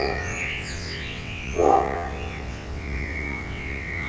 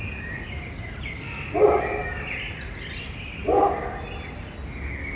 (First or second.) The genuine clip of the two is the second